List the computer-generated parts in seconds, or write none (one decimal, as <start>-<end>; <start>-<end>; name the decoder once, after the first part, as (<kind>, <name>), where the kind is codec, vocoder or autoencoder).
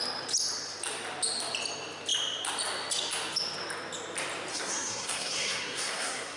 4.5-6.4 (codec, SNAC)